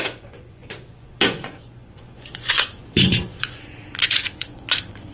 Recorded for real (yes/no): no